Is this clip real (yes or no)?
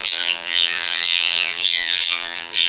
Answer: no